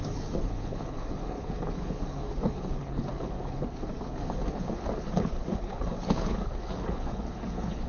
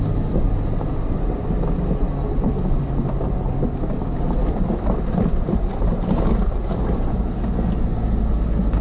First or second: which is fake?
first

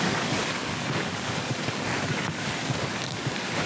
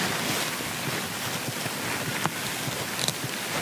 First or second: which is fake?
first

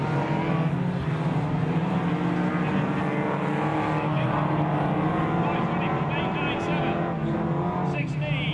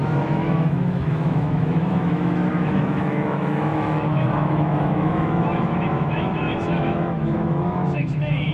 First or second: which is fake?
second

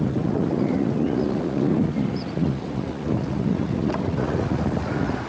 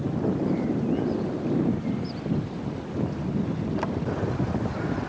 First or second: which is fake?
first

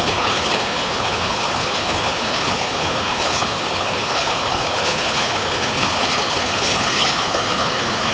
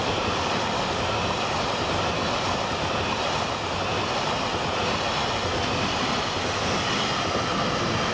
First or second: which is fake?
first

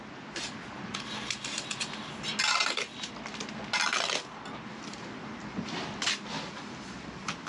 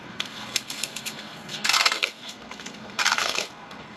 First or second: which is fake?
second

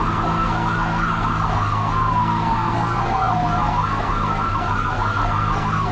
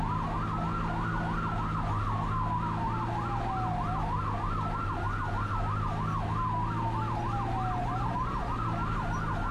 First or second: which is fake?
first